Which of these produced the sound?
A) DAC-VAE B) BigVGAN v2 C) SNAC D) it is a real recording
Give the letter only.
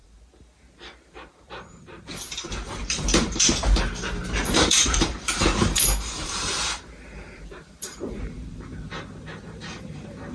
B